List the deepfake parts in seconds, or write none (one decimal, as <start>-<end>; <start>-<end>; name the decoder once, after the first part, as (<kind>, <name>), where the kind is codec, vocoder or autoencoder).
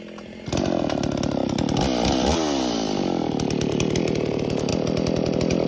none